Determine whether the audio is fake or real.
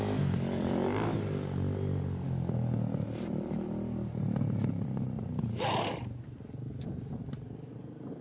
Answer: real